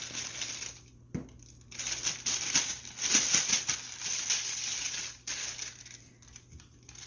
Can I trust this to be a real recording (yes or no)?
yes